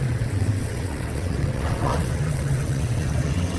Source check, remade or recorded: remade